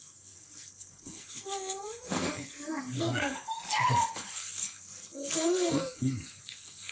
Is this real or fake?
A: fake